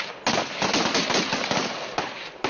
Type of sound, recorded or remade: recorded